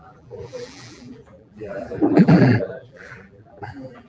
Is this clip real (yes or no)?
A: no